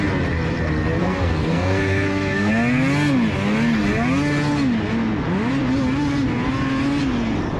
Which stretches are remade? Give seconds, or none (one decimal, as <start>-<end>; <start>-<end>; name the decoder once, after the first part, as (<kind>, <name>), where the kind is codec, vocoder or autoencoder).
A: 1.0-2.5 (codec, SNAC)